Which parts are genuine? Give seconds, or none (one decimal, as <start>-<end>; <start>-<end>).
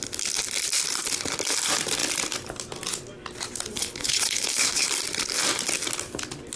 0.0-3.8; 4.9-6.6